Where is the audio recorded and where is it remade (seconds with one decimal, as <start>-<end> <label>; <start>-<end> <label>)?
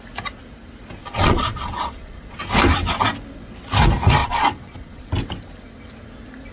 0.0-1.0 recorded; 1.0-2.4 remade; 2.4-4.2 recorded; 4.2-5.1 remade; 5.1-6.5 recorded